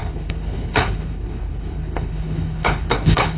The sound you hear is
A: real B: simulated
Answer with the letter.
B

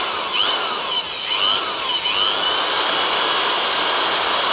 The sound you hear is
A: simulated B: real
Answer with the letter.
B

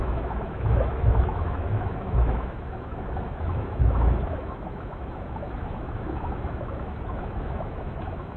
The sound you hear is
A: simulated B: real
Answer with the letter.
A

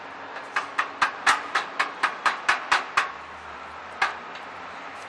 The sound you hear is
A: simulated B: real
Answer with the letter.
B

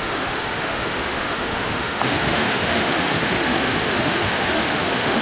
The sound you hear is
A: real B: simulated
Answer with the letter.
B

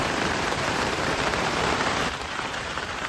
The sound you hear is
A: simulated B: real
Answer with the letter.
A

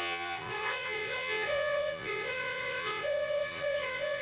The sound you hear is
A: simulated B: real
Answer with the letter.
A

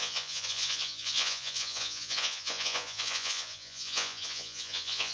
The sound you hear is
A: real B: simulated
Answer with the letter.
B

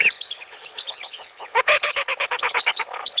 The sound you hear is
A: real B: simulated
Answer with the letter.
B